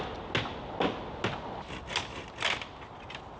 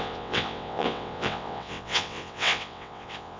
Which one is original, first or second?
first